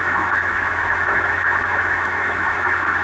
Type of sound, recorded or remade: remade